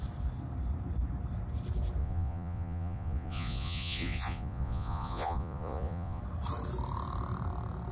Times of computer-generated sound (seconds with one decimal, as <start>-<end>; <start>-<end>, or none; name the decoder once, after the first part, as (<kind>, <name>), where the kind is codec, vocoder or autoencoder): 2.0-6.2 (vocoder, Vocos)